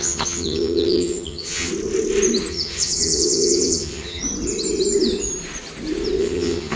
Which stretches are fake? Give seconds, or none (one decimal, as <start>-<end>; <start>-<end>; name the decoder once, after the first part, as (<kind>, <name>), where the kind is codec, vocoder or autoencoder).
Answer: 0.0-1.7 (vocoder, HiFi-GAN); 2.5-4.2; 6.2-6.8